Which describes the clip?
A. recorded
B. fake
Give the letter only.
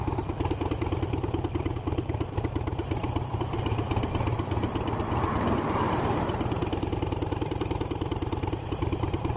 B